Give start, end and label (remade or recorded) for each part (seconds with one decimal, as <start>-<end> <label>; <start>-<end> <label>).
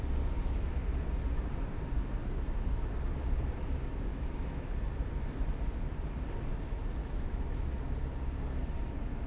0.0-4.1 recorded; 4.1-4.7 remade; 4.7-7.0 recorded; 7.0-7.6 remade; 7.6-9.3 recorded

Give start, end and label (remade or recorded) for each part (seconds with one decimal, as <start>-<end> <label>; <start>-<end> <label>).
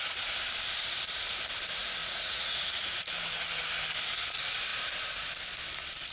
0.0-2.0 recorded; 2.0-3.1 remade; 3.1-6.1 recorded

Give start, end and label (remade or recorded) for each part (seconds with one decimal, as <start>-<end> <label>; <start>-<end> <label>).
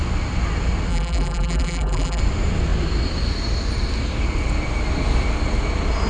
0.0-0.9 recorded; 0.9-2.2 remade; 2.2-6.1 recorded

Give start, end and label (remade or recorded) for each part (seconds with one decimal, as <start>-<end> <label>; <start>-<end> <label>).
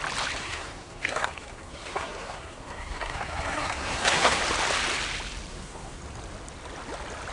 0.0-0.4 recorded; 0.4-4.4 remade; 4.4-5.5 recorded; 5.5-6.0 remade; 6.0-7.3 recorded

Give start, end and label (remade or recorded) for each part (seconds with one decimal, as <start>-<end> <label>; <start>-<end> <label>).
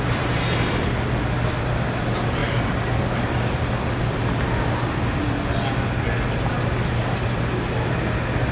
0.0-8.5 recorded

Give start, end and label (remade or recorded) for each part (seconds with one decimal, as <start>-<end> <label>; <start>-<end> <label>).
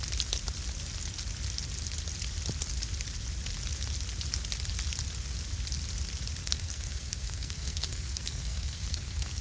0.0-6.4 recorded; 6.4-9.4 remade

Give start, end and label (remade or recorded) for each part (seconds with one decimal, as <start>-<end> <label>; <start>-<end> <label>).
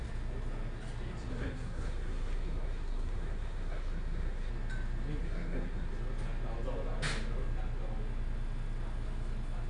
0.0-1.3 recorded; 1.3-4.5 remade; 4.5-5.2 recorded; 5.2-5.9 remade; 5.9-9.7 recorded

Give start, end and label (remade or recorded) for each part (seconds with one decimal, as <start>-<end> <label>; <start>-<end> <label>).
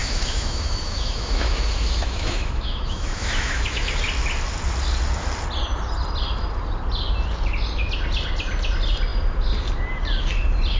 0.0-4.0 remade; 4.0-10.8 recorded